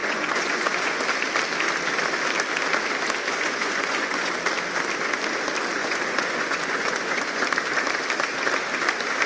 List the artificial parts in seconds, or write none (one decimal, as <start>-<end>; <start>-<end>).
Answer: 0.0-1.0; 3.3-4.3; 5.8-7.4